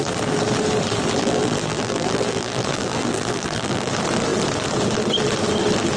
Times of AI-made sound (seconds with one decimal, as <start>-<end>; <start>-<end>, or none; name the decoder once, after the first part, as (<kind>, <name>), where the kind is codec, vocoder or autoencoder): 1.2-3.9 (vocoder, BigVGAN v2)